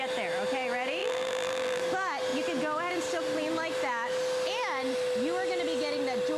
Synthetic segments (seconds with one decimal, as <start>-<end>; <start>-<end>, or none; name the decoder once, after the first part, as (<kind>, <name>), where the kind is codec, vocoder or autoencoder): 1.0-1.8 (vocoder, BigVGAN v2)